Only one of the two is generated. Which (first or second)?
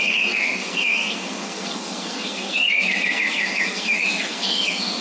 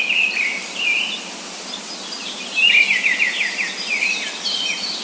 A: first